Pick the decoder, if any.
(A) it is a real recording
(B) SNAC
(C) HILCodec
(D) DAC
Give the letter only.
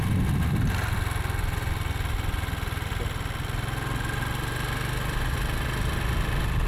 A